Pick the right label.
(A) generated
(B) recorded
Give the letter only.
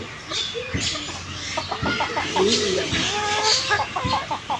B